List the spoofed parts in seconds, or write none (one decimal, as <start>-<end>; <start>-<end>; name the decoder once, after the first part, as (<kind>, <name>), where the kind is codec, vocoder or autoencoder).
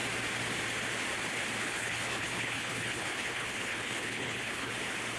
1.6-4.7 (codec, HILCodec)